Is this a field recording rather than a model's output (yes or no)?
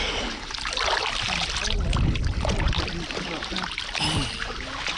yes